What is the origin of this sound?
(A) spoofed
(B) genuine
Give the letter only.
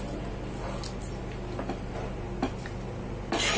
B